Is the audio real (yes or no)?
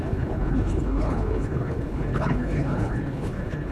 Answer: no